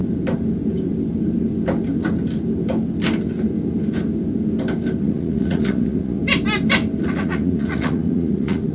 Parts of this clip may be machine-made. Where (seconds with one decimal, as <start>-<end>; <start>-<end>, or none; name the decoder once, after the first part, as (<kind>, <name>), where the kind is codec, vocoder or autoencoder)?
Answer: 5.0-6.2 (vocoder, Vocos); 7.0-8.7